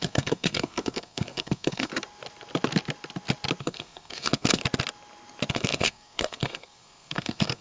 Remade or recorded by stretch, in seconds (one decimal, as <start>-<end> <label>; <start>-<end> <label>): 0.0-1.9 remade; 1.9-3.6 recorded; 3.6-4.6 remade; 4.6-5.5 recorded; 5.5-7.6 remade